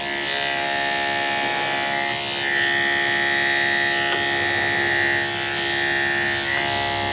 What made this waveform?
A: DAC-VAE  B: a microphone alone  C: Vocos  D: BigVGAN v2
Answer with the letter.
B